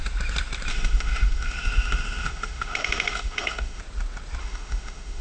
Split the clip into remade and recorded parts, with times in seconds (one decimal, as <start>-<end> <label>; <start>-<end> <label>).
0.0-0.7 recorded; 0.7-3.8 remade; 3.8-4.4 recorded; 4.4-5.2 remade